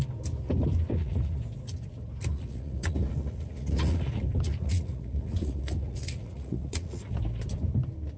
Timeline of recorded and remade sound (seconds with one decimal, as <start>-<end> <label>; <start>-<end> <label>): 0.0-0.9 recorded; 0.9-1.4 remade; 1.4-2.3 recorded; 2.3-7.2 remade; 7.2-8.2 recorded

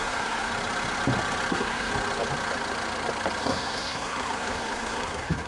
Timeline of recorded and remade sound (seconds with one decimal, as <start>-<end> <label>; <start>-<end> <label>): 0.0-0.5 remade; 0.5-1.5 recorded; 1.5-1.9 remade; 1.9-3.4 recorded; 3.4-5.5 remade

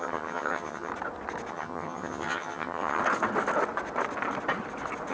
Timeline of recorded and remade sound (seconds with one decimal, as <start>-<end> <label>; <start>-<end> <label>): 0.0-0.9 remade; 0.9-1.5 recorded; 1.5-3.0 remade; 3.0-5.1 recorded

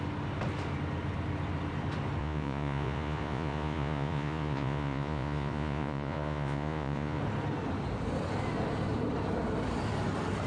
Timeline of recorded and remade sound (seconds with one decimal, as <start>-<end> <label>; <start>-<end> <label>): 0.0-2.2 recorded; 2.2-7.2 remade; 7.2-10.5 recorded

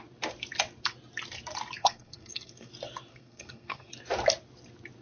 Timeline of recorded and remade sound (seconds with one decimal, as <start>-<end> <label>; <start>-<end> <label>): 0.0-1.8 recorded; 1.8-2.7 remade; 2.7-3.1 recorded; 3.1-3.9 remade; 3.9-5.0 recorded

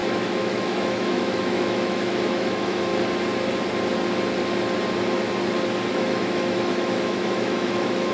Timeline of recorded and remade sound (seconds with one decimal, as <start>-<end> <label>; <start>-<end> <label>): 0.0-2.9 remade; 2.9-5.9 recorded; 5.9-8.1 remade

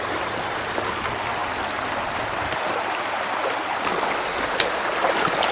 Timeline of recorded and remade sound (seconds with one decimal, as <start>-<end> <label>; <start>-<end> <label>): 0.0-5.5 recorded

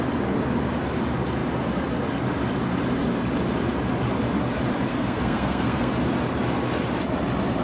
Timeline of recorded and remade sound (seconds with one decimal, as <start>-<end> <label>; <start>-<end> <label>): 0.0-4.9 recorded; 4.9-5.9 remade; 5.9-7.6 recorded